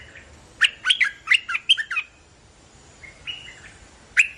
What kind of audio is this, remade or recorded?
recorded